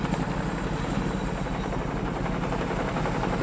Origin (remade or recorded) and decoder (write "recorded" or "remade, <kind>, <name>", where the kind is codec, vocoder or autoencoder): recorded